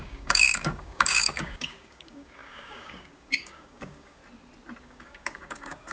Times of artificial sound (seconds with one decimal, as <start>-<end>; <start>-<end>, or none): 0.0-4.2; 4.8-5.9